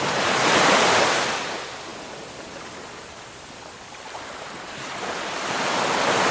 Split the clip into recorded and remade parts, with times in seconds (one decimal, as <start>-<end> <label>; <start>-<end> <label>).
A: 0.0-6.3 recorded